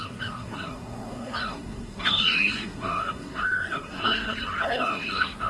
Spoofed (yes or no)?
yes